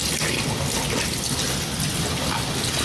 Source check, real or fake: real